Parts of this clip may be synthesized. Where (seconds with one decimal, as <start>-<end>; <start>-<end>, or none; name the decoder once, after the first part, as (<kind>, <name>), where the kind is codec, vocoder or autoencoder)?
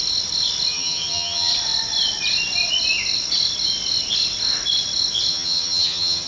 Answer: 0.7-1.5 (vocoder, HiFi-GAN); 5.3-6.3